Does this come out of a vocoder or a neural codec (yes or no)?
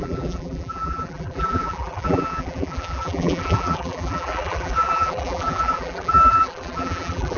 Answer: yes